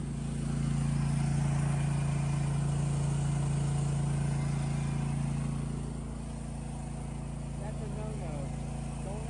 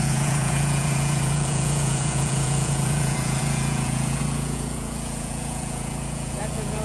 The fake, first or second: second